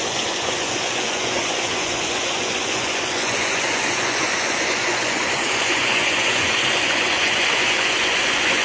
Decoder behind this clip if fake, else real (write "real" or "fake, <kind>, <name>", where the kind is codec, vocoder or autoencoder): fake, vocoder, Vocos